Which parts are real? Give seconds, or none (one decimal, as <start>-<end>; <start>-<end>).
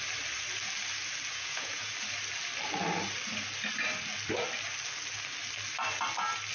0.0-1.3; 1.9-6.5